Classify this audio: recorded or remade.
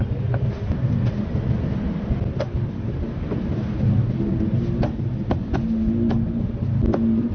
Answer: recorded